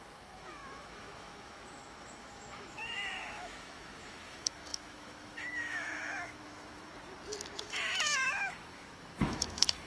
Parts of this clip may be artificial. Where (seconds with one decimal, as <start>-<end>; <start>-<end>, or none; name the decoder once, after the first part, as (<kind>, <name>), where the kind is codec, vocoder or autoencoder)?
0.0-6.9 (autoencoder, DAC-VAE); 7.6-9.9